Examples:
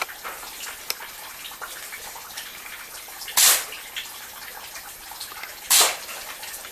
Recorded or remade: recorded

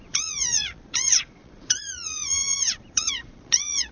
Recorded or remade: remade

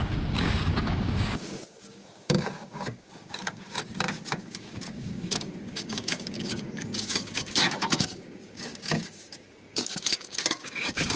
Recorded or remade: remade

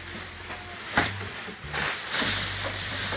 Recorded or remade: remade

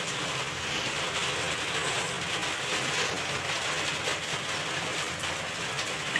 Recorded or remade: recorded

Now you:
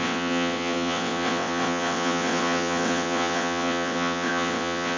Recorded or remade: remade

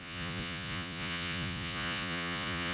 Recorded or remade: remade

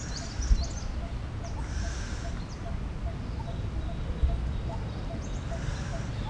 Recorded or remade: recorded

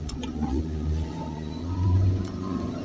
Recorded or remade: remade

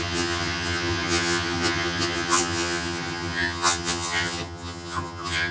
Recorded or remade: remade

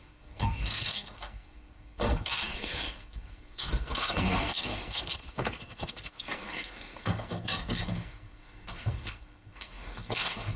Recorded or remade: remade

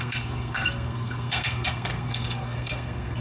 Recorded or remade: remade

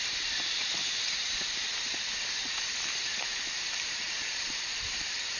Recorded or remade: remade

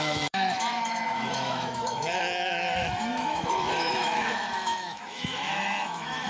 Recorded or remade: remade